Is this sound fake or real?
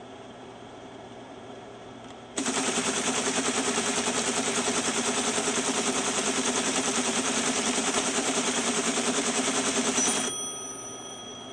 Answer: fake